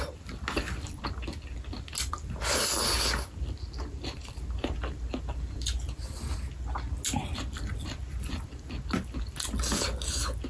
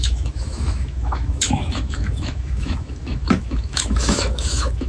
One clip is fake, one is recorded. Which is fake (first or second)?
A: second